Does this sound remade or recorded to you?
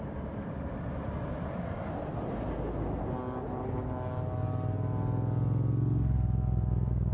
recorded